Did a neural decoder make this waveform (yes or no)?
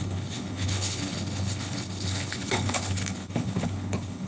yes